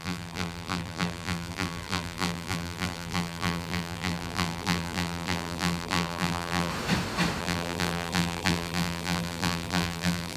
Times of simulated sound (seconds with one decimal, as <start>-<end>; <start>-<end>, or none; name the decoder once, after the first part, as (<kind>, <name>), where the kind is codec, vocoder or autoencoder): 0.0-6.7 (vocoder, BigVGAN v2); 7.4-10.4